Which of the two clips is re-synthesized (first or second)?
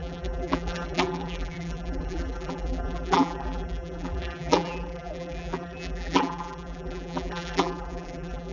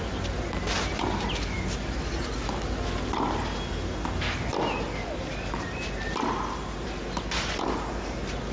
first